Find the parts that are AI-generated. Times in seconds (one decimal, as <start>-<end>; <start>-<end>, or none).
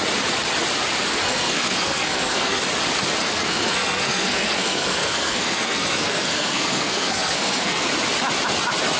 1.1-2.6; 3.2-7.9